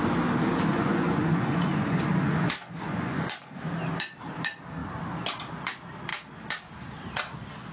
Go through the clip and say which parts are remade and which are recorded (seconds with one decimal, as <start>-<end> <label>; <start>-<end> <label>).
0.0-0.7 recorded; 0.7-3.7 remade; 3.7-7.7 recorded